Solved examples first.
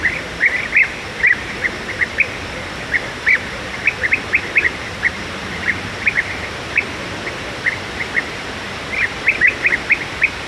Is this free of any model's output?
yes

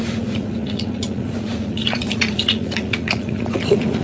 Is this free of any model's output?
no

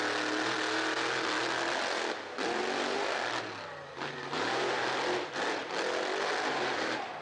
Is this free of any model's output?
yes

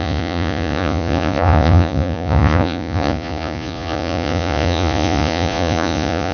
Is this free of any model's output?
no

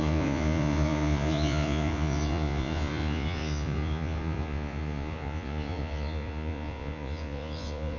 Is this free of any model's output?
no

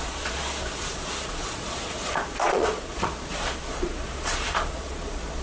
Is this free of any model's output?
no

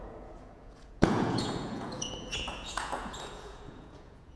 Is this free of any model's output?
no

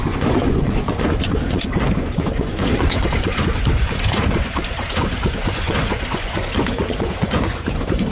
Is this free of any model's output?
no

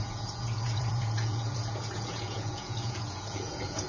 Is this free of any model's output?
no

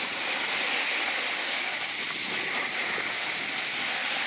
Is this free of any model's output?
yes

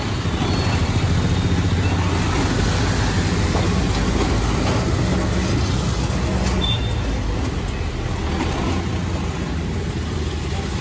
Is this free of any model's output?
yes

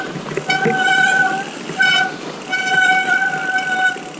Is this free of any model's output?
yes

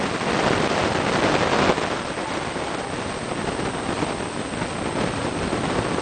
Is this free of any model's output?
yes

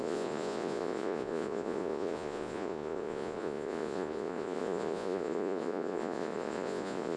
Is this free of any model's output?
no